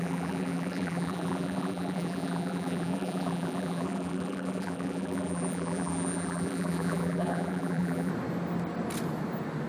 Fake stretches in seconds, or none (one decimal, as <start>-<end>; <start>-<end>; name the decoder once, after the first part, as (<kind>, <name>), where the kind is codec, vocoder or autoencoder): 0.0-8.1 (vocoder, BigVGAN v2)